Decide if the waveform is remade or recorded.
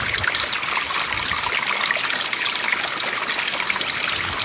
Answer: recorded